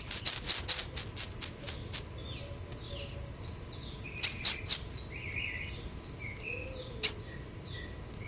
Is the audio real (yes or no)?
yes